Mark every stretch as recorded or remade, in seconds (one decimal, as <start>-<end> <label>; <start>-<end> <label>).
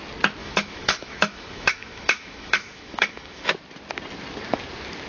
0.0-0.4 recorded; 0.4-3.5 remade; 3.5-5.1 recorded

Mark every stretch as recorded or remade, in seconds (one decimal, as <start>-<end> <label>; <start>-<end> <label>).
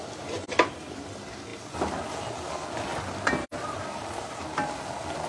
0.0-5.3 recorded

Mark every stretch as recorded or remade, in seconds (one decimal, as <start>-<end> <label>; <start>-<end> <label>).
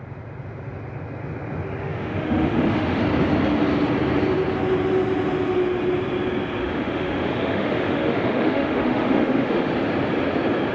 0.0-1.8 recorded; 1.8-3.0 remade; 3.0-6.6 recorded; 6.6-9.7 remade; 9.7-10.7 recorded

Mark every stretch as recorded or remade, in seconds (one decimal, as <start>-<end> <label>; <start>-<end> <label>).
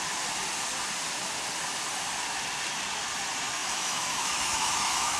0.0-3.6 recorded; 3.6-5.2 remade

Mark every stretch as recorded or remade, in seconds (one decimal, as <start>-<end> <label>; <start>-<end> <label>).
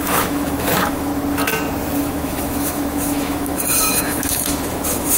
0.0-1.1 remade; 1.1-2.0 recorded; 2.0-5.2 remade